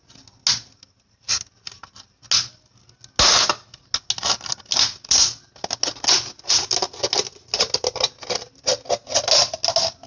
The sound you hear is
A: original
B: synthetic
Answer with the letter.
A